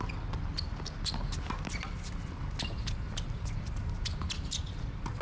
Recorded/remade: recorded